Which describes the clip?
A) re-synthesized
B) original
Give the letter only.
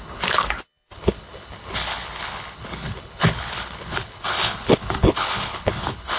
A